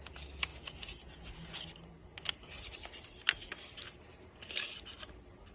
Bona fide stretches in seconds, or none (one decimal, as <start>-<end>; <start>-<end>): 0.0-0.5; 1.6-5.5